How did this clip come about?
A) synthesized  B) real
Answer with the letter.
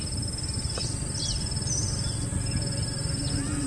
B